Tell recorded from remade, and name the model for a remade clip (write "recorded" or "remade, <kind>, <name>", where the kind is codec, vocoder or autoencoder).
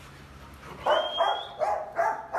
recorded